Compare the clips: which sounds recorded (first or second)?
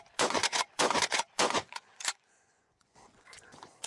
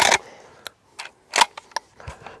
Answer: second